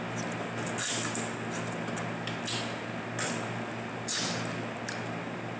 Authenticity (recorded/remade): recorded